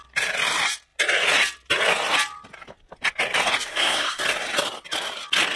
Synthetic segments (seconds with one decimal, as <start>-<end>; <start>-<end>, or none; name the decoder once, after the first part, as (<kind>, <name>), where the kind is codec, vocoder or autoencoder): 3.7-4.2 (codec, SNAC)